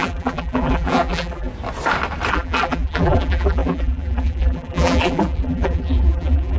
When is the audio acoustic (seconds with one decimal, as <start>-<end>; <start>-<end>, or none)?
1.5-2.3